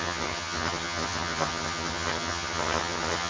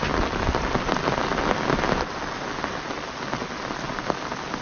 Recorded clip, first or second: second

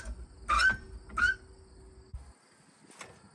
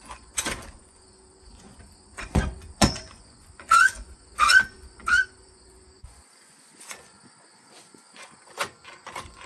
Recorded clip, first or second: first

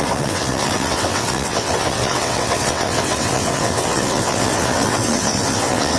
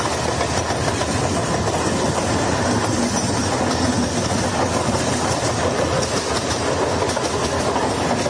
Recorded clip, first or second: second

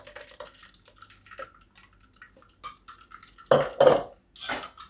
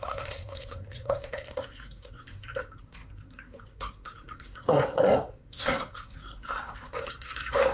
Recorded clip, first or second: first